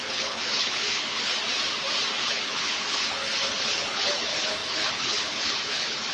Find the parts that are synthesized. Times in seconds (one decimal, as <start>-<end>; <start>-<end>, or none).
0.0-1.3; 2.1-6.1